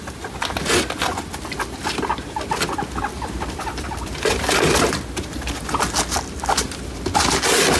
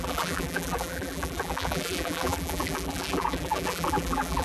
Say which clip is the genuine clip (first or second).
first